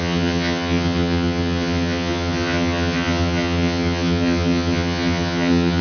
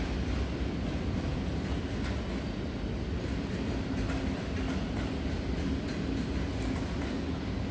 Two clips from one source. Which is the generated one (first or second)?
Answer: first